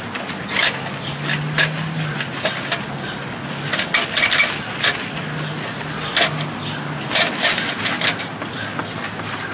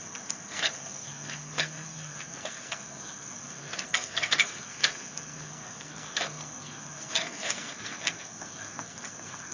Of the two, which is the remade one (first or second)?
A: second